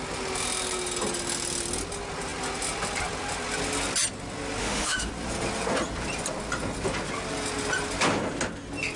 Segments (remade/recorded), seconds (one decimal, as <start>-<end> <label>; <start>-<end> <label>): 0.0-4.6 recorded; 4.6-5.1 remade; 5.1-9.0 recorded